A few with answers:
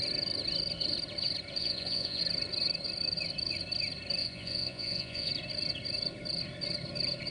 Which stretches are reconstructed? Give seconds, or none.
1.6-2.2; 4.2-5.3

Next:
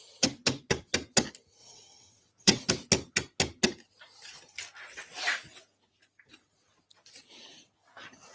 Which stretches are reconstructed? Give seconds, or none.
1.6-2.7

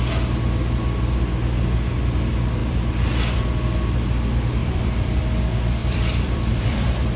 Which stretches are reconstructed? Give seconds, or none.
2.6-3.4; 4.6-5.2; 5.8-7.2

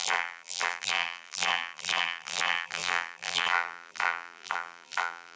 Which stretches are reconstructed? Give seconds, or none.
0.0-5.4

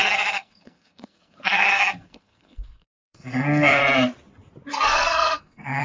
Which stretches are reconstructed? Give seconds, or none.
0.0-3.8; 4.7-5.8

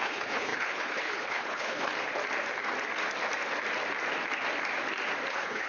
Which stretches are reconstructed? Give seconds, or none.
0.0-1.9; 5.3-5.7

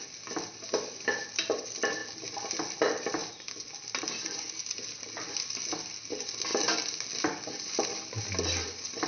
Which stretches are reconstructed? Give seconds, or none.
none